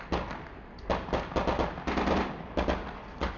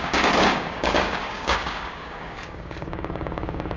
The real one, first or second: first